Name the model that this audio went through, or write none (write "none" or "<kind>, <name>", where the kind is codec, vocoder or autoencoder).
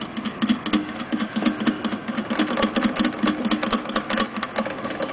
none